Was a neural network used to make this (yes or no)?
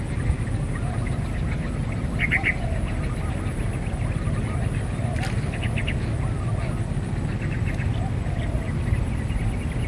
no